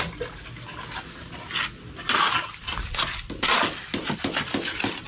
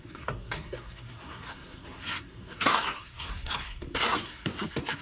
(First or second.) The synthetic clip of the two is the second